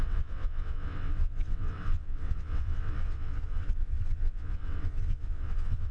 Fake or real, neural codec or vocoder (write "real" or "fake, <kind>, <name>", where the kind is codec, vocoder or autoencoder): fake, vocoder, WaveNeXt